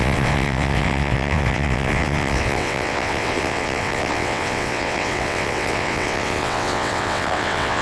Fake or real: fake